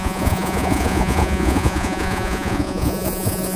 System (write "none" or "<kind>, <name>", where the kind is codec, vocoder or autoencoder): vocoder, Vocos